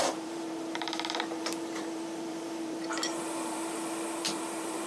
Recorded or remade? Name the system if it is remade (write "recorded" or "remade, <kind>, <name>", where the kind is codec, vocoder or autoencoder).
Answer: remade, vocoder, BigVGAN v2